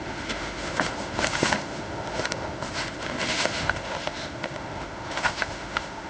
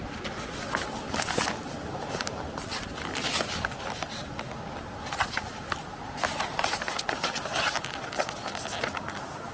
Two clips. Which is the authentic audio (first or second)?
second